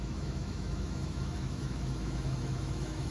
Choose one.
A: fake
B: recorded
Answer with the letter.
A